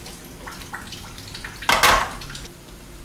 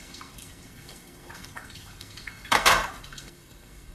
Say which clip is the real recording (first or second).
first